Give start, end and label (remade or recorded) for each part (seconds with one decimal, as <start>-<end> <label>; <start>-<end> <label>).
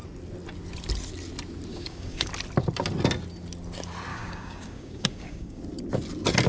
0.0-1.7 recorded; 1.7-2.3 remade; 2.3-4.1 recorded; 4.1-5.6 remade; 5.6-6.5 recorded